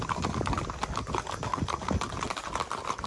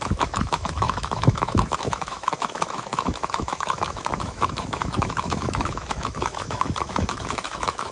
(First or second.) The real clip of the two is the first